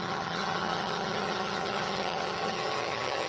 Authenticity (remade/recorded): remade